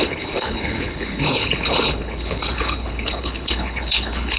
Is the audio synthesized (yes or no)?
yes